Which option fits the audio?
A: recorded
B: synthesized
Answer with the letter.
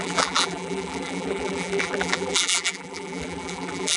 B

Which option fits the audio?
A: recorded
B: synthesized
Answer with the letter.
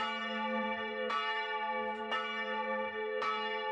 B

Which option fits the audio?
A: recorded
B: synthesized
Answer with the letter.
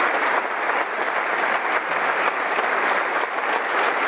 A